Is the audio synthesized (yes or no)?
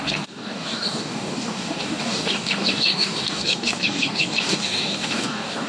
yes